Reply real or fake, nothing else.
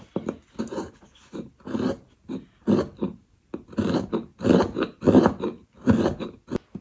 real